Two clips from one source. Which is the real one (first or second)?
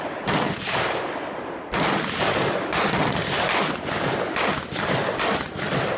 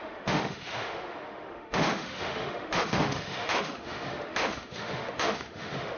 first